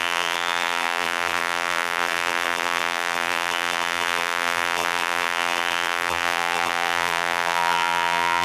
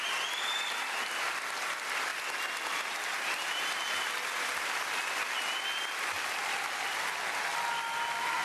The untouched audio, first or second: second